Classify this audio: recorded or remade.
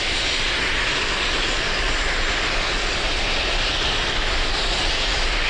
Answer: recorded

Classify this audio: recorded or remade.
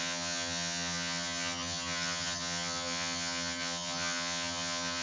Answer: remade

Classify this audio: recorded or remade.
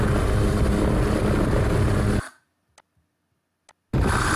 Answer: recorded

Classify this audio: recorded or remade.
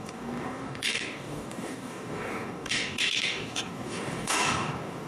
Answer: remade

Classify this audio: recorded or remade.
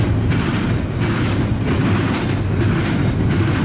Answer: recorded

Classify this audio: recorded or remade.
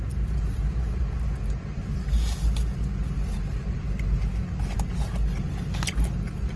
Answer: recorded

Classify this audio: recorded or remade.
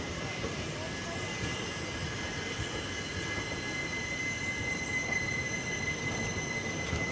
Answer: recorded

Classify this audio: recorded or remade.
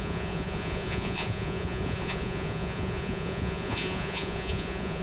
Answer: remade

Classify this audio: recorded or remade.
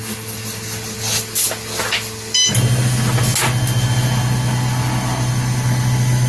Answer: recorded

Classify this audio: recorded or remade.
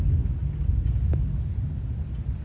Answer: recorded